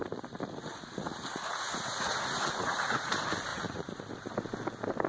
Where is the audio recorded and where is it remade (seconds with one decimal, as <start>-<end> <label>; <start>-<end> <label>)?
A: 0.0-3.1 remade; 3.1-3.5 recorded; 3.5-4.0 remade; 4.0-5.1 recorded